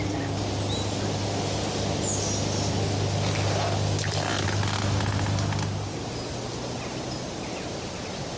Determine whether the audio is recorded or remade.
recorded